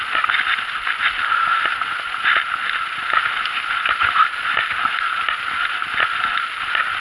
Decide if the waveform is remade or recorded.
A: recorded